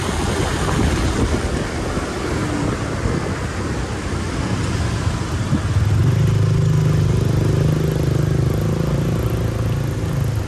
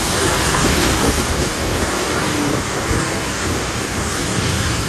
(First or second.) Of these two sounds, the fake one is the second